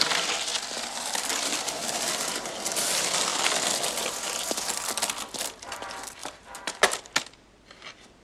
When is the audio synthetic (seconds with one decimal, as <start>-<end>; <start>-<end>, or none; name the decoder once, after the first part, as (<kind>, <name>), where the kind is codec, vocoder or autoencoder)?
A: 0.5-2.6 (vocoder, BigVGAN v2); 3.3-4.9; 6.2-7.0

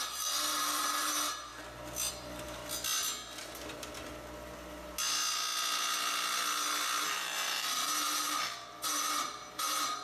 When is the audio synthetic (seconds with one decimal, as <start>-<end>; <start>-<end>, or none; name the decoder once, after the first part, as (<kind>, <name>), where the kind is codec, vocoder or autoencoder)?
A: 0.0-1.5 (vocoder, BigVGAN v2); 2.1-2.6; 7.0-10.0

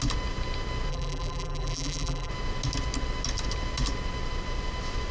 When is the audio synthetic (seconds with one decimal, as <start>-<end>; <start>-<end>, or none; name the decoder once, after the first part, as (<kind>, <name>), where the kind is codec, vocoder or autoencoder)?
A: 0.9-2.3 (vocoder, BigVGAN v2)

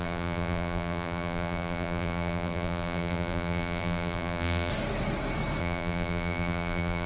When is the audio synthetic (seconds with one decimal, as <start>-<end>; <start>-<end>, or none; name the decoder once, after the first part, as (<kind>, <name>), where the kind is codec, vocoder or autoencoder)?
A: 0.0-4.7 (vocoder, BigVGAN v2); 5.6-7.1

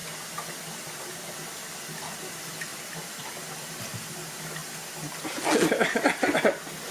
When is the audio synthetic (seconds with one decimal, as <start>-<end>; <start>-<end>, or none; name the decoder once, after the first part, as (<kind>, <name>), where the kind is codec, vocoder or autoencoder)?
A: 2.7-3.5 (vocoder, BigVGAN v2)

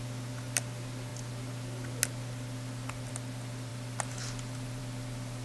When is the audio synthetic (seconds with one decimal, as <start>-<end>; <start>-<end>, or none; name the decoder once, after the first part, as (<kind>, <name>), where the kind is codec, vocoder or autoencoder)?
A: 3.7-4.8 (vocoder, BigVGAN v2)

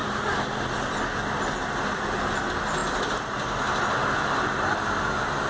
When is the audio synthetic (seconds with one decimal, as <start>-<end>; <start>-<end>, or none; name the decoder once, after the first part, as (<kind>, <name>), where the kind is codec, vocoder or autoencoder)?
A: 1.6-2.4 (vocoder, BigVGAN v2)